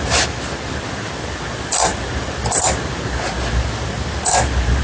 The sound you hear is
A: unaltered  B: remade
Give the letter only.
A